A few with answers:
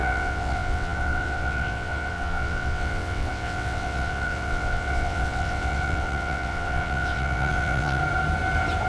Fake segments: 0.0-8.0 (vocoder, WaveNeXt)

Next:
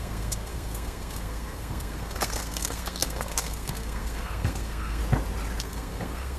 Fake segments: 0.0-5.0 (codec, SNAC); 5.6-6.4

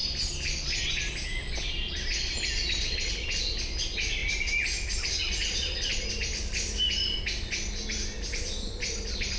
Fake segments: none

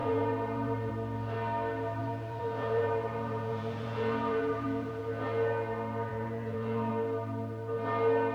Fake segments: 0.0-0.9 (vocoder, Vocos); 2.0-5.0; 6.1-6.9

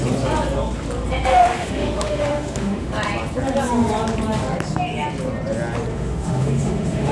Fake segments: 1.3-2.9 (autoencoder, DAC-VAE); 5.9-7.1

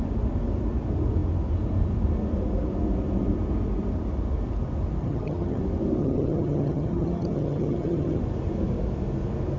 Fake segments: 5.0-5.6 (vocoder, HiFi-GAN); 6.0-8.2

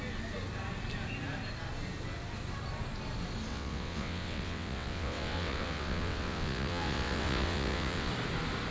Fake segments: 3.5-8.1 (vocoder, WaveNeXt)

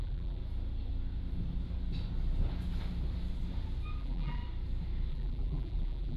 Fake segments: 0.0-0.4 (vocoder, BigVGAN v2); 4.0-4.4; 5.1-6.2